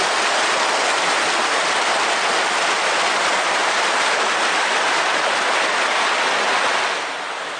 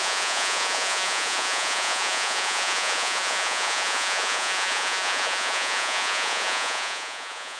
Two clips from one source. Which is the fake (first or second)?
second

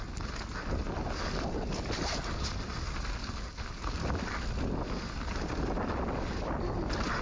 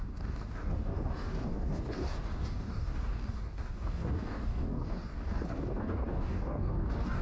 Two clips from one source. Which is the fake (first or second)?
second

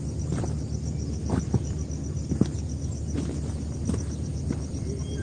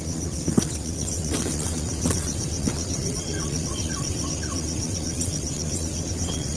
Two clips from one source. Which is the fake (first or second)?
second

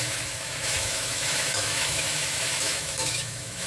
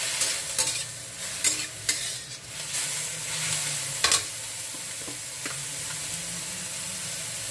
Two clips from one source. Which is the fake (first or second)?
first